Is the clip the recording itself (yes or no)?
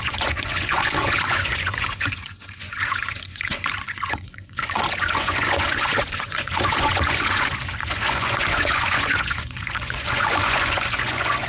no